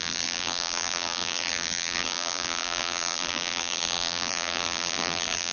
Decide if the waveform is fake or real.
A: fake